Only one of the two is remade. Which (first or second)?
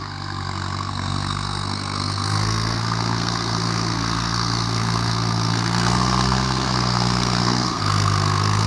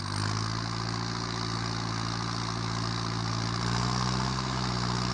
first